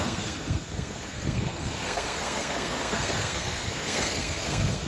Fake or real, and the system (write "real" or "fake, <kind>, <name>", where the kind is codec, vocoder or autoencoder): fake, codec, SNAC